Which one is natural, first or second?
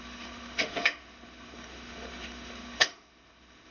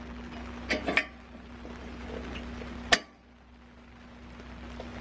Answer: second